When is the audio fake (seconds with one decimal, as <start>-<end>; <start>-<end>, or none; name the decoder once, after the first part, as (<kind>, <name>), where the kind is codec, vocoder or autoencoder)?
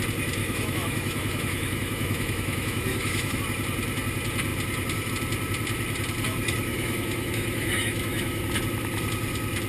0.4-3.4 (autoencoder, DAC-VAE); 6.7-8.4